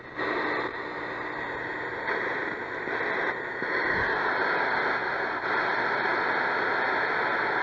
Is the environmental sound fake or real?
real